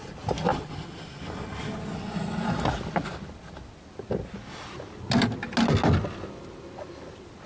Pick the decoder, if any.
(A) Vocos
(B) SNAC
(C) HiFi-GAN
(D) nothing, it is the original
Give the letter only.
D